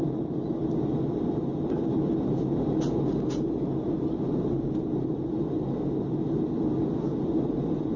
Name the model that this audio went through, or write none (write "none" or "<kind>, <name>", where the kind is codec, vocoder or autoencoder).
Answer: none